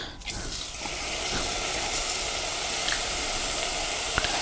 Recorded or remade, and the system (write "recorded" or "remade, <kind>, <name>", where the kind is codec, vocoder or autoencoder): recorded